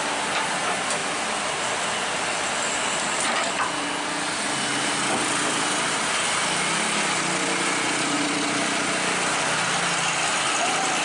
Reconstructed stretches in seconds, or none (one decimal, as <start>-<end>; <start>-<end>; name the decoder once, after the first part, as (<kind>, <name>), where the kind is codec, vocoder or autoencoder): none